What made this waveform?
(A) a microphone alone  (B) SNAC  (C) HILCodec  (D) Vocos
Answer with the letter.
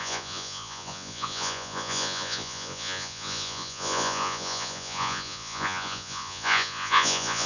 D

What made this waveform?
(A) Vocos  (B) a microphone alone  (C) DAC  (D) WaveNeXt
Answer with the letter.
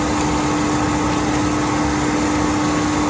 B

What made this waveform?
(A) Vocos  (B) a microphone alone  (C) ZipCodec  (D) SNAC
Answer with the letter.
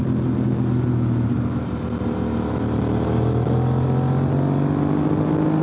B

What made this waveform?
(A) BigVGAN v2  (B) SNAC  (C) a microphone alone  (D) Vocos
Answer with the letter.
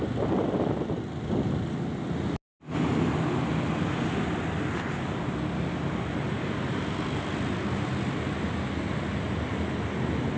C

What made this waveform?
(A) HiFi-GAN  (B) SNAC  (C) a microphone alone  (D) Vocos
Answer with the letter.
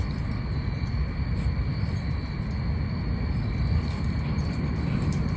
C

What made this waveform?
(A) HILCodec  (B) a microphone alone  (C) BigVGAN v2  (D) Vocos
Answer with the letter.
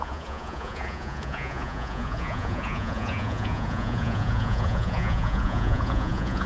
D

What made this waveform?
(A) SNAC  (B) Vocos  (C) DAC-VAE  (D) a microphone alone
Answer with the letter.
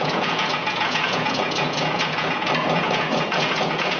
B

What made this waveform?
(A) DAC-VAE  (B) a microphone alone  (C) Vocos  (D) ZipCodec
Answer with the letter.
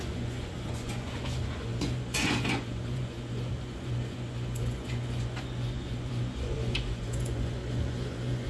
C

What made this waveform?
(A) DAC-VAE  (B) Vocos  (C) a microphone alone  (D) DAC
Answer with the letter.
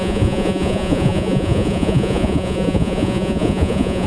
B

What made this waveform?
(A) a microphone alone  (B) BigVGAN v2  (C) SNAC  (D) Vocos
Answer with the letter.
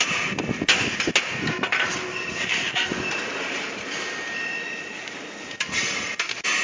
A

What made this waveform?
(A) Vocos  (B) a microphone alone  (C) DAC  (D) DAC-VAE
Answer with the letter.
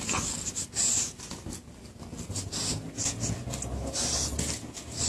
B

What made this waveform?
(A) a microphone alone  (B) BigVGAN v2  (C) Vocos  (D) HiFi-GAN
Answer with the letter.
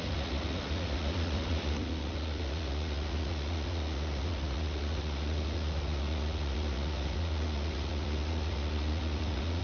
C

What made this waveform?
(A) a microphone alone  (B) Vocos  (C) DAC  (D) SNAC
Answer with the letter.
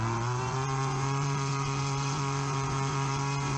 B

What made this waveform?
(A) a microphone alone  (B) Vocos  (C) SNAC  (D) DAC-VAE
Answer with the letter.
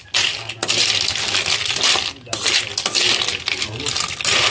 A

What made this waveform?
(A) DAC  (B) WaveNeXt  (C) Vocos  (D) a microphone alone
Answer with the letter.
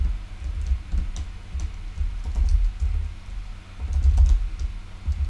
D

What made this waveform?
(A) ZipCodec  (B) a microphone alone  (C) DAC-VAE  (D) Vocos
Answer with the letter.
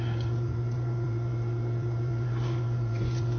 D